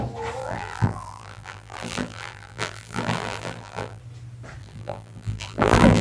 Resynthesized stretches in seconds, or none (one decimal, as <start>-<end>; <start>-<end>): 0.4-4.0; 4.6-6.0